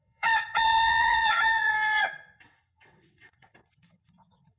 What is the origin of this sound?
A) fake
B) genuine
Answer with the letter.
A